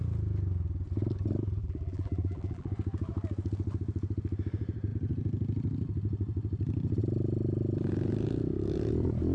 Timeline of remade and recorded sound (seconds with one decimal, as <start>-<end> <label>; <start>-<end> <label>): 0.0-1.6 recorded; 1.6-2.7 remade; 2.7-9.3 recorded